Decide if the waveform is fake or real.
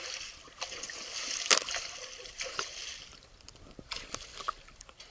real